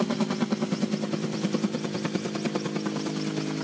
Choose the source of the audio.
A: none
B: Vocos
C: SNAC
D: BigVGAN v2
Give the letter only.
A